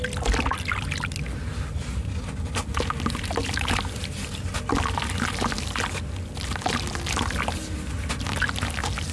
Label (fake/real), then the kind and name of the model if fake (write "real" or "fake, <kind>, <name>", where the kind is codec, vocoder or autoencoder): real